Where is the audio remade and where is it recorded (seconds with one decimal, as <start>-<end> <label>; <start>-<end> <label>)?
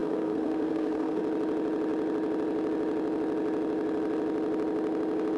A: 0.0-1.2 remade; 1.2-5.4 recorded